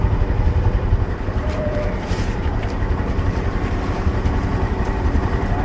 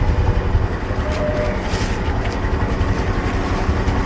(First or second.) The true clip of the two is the second